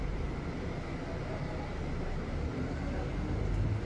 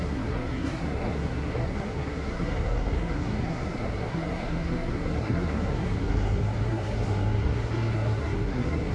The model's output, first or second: second